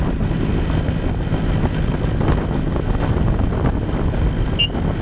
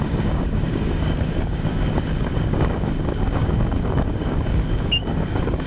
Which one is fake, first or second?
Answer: second